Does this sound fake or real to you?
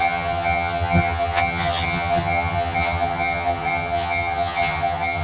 fake